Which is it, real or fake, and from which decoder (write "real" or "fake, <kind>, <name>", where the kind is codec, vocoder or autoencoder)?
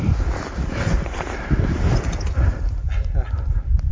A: real